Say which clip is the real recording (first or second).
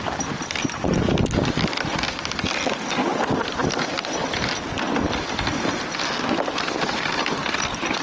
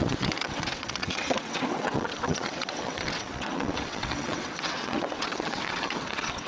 first